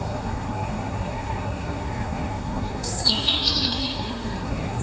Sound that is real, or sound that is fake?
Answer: fake